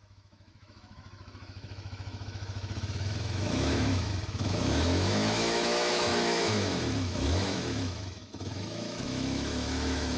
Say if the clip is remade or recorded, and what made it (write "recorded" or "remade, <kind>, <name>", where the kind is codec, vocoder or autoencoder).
remade, autoencoder, DAC-VAE